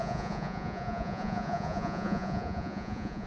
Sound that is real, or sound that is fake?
fake